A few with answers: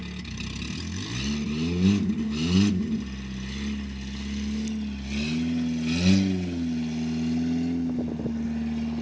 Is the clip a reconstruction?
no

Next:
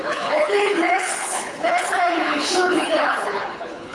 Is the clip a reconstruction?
yes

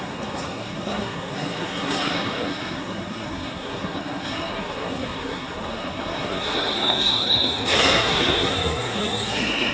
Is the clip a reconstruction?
yes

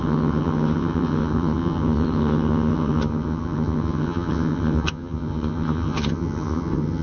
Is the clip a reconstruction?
yes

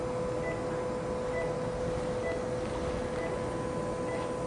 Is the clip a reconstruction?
no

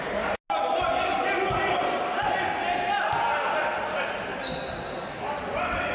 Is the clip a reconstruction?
no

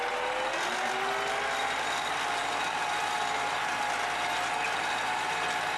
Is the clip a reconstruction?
no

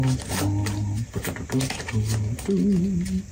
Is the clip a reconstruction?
no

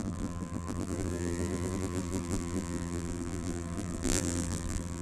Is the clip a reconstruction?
yes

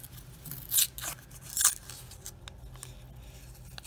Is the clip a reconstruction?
no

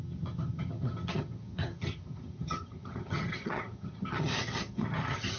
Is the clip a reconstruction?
yes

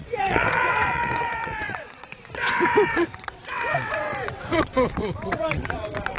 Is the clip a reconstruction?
yes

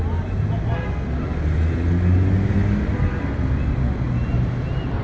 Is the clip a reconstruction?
no